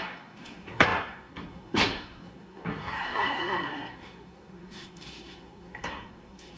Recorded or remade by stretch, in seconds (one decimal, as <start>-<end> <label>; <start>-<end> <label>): 0.0-6.6 remade